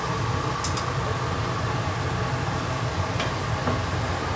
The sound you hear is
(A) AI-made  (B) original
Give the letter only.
B